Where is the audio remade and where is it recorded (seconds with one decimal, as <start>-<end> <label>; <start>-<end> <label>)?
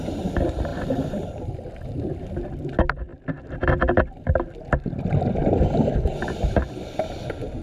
0.0-0.7 recorded; 0.7-2.2 remade; 2.2-3.1 recorded; 3.1-3.6 remade; 3.6-7.6 recorded